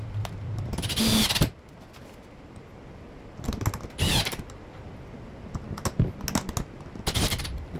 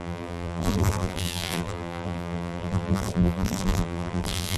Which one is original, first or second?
first